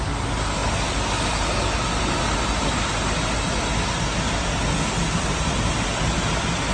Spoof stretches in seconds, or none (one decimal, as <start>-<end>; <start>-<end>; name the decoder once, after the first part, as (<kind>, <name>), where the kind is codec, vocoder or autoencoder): none